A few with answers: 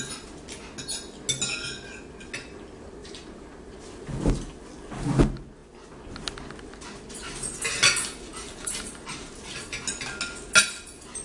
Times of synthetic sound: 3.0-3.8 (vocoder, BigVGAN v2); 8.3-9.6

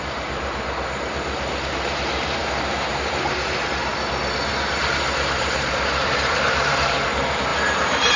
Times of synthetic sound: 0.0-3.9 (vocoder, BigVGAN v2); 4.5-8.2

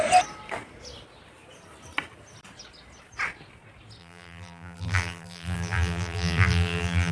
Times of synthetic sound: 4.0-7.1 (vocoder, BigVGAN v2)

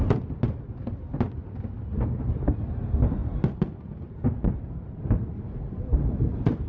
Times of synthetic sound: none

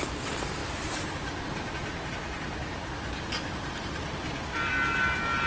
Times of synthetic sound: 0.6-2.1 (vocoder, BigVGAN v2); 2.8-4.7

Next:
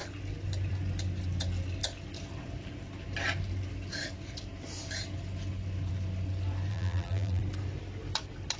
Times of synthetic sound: 6.7-7.4 (vocoder, BigVGAN v2)